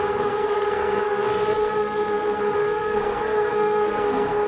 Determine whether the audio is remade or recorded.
remade